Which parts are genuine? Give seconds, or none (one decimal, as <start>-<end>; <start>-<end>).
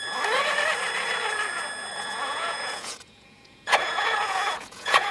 0.0-1.9